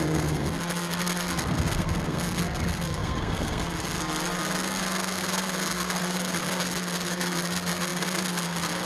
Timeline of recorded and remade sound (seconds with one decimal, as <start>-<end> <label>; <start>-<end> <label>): 0.0-8.9 remade